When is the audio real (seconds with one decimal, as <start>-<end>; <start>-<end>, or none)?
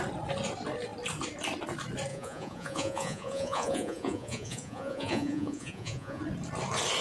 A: 0.0-2.1; 6.2-7.0